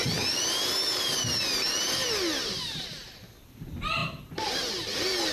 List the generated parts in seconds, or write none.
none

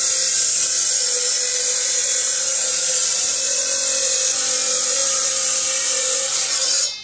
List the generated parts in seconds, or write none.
2.0-3.6 (vocoder, BigVGAN v2); 5.0-6.5

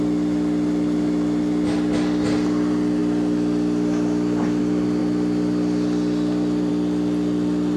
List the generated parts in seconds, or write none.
none

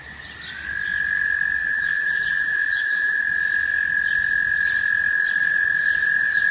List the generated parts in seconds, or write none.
1.6-3.2 (vocoder, BigVGAN v2)

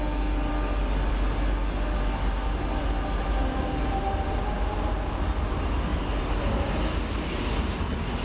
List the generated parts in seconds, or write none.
none

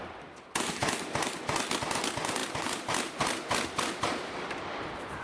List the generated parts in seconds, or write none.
2.4-2.9 (vocoder, BigVGAN v2)

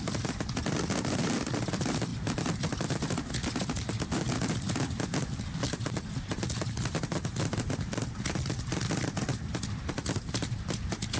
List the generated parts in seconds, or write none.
none

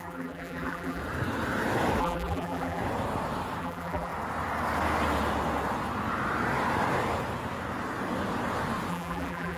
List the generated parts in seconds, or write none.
0.0-1.0 (vocoder, BigVGAN v2); 2.0-2.8; 3.6-4.1; 8.9-9.6